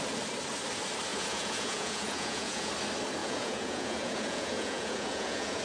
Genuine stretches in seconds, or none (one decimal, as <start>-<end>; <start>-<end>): 0.0-1.1; 2.7-3.2